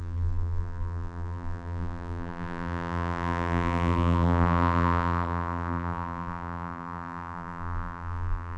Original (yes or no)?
no